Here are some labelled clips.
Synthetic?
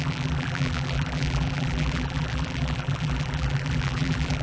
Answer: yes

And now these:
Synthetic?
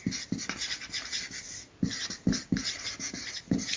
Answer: no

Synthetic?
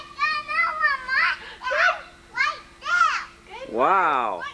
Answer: no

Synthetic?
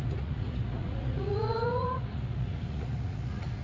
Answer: yes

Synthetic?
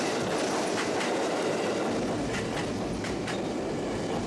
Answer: no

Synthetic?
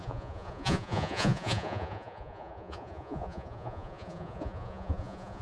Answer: yes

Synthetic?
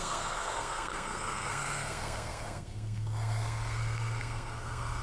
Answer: yes